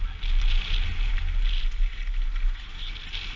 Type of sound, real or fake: real